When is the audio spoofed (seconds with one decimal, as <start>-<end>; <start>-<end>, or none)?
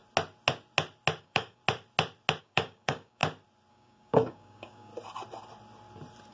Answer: 1.2-1.6; 2.4-3.2; 3.7-4.9